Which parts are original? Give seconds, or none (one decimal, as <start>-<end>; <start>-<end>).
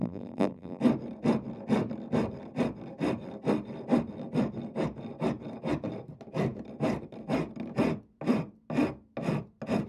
0.8-9.9